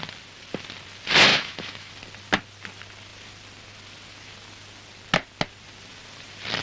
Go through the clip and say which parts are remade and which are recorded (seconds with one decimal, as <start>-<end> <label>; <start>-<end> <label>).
0.0-1.3 recorded; 1.3-1.9 remade; 1.9-6.6 recorded